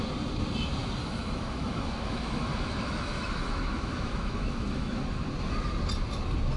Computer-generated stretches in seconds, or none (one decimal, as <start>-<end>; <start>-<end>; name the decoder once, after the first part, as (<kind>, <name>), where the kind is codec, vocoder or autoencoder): 1.0-5.0 (autoencoder, DAC-VAE)